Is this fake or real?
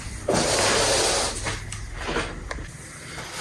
real